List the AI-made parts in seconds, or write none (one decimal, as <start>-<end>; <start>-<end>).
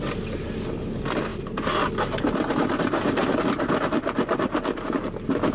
none